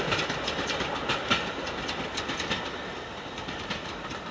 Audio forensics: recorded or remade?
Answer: recorded